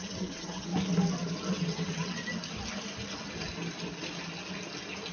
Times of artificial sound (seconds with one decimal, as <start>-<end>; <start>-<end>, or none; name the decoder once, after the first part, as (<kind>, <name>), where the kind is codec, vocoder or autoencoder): 0.0-0.7 (vocoder, WaveNeXt); 1.5-2.2